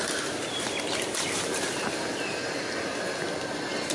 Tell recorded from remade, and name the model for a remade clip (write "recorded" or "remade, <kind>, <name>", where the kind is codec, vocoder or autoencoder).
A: recorded